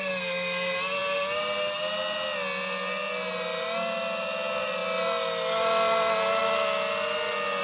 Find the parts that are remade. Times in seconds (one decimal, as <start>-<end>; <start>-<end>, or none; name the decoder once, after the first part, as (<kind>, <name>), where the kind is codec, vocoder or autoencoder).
none